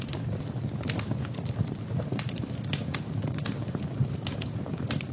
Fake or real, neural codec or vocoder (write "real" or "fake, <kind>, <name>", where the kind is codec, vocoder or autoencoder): real